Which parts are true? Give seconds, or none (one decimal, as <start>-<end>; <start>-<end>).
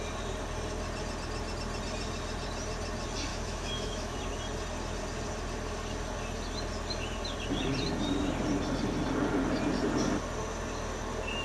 0.0-3.3; 4.2-11.4